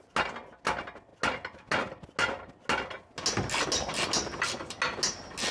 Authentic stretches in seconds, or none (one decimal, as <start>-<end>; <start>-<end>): 0.0-5.5